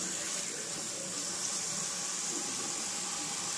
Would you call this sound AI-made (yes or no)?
yes